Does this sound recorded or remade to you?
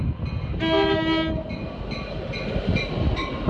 recorded